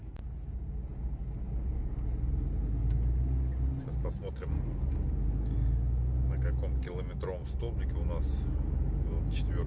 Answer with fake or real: real